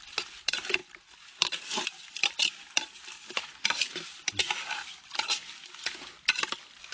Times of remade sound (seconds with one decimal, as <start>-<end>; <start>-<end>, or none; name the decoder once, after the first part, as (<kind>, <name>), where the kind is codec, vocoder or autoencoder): 0.0-0.8 (vocoder, BigVGAN v2); 1.4-6.9